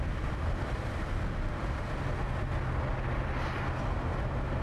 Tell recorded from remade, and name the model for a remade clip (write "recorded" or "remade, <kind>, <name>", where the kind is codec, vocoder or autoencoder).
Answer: recorded